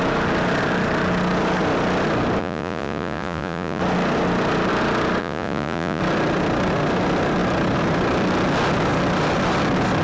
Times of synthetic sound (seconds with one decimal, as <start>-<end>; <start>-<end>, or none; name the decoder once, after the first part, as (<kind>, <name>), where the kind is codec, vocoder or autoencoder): 2.4-3.8 (vocoder, Vocos); 5.2-6.0

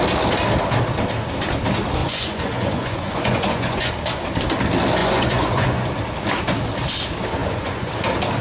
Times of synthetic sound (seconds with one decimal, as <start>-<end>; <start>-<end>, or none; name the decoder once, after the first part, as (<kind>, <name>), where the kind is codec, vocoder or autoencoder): 2.0-3.9 (vocoder, Vocos); 5.0-5.9; 7.4-7.9